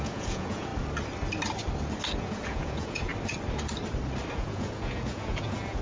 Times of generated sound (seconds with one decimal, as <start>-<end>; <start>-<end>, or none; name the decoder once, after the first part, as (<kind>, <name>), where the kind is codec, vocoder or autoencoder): 0.0-0.7 (vocoder, Vocos); 2.2-3.1; 4.3-5.8